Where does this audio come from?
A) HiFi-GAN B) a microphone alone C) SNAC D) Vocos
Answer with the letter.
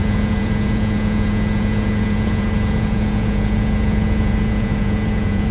D